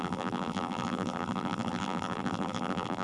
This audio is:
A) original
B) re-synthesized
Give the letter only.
B